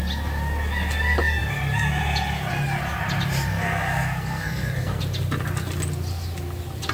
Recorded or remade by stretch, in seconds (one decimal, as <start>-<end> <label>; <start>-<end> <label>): 0.0-3.5 recorded; 3.5-5.0 remade; 5.0-6.9 recorded